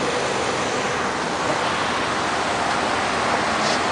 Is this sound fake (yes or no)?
no